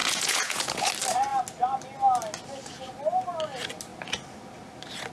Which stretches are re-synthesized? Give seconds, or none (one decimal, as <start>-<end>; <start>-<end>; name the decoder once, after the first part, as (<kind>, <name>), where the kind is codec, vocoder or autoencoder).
0.0-0.9 (vocoder, Vocos)